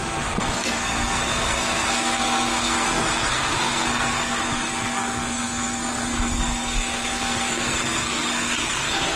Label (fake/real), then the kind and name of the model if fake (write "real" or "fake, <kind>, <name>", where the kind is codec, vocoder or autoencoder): fake, codec, SNAC